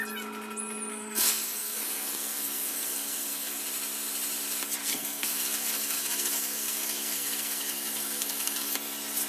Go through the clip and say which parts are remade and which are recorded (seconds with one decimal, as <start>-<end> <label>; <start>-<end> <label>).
0.0-0.9 recorded; 0.9-3.6 remade; 3.6-4.8 recorded; 4.8-8.7 remade; 8.7-9.3 recorded